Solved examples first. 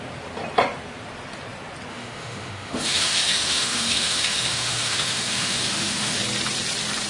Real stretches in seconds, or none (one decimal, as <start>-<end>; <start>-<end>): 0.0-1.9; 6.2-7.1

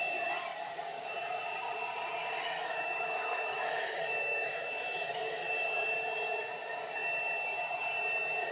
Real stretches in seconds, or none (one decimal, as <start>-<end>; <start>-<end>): 0.0-2.2; 5.4-8.5

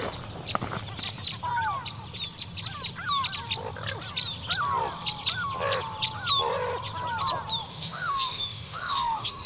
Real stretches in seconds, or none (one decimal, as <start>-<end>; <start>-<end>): 0.0-7.7

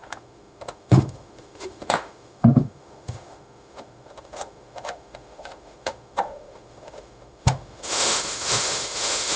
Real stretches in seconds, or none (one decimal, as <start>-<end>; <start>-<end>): none

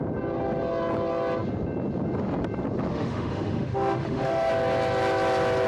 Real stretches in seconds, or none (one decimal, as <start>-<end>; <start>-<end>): 0.0-2.9; 4.5-5.7